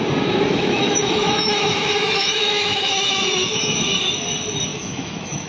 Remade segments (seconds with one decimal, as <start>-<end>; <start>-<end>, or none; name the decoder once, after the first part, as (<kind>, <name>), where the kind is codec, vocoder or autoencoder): 0.5-3.8 (autoencoder, DAC-VAE); 4.7-5.5